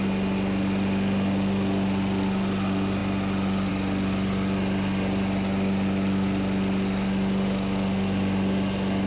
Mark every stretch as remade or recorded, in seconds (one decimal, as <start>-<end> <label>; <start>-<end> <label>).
0.0-9.1 recorded